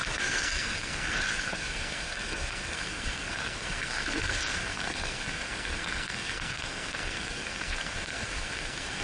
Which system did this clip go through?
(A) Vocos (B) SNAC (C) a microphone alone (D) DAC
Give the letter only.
B